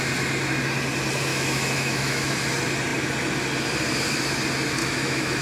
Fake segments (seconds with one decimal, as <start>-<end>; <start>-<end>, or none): 1.3-2.3; 4.8-5.4